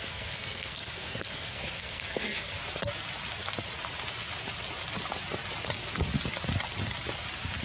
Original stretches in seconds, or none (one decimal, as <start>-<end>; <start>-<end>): 2.6-7.6